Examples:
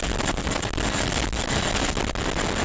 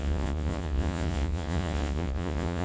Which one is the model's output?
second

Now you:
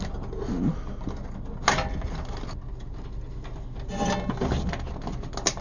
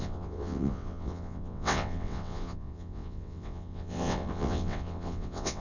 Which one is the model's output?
second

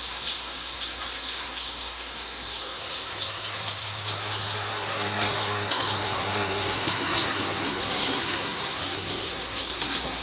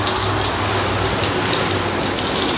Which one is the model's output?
first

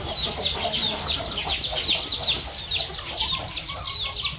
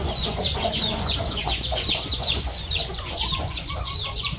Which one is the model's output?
second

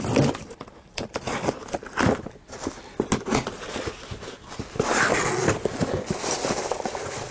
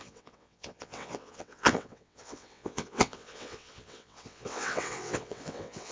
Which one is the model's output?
second